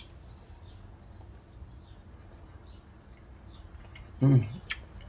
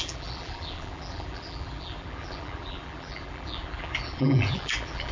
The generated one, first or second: second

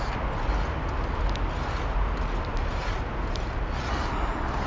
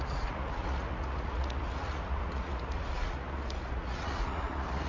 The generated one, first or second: second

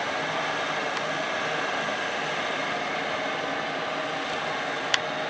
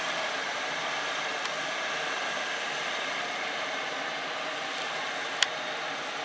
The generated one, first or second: second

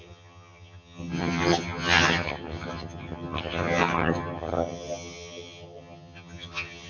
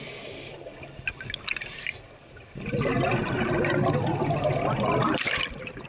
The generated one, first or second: first